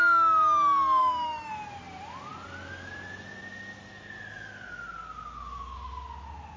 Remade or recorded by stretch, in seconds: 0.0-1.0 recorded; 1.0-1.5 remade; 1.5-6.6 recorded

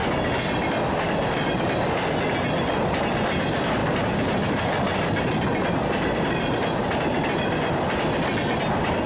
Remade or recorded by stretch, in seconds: 0.0-2.8 recorded; 2.8-3.8 remade; 3.8-8.7 recorded; 8.7-9.1 remade

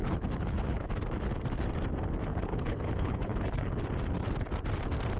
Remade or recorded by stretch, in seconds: 0.0-0.9 remade; 0.9-2.3 recorded; 2.3-3.8 remade; 3.8-5.2 recorded

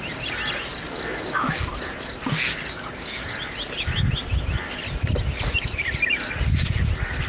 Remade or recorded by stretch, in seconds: 0.0-7.3 recorded

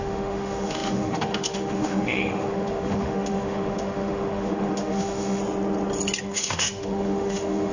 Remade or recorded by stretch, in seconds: 0.0-5.4 remade; 5.4-6.2 recorded; 6.2-7.7 remade

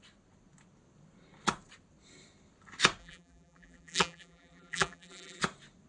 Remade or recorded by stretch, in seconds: 0.0-3.0 recorded; 3.0-5.4 remade; 5.4-5.9 recorded